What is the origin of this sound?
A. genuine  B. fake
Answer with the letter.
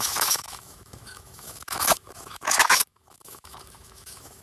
B